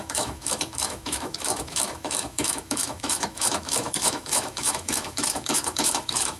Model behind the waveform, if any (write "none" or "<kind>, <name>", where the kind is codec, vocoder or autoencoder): autoencoder, DAC-VAE